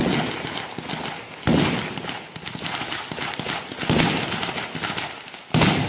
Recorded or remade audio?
recorded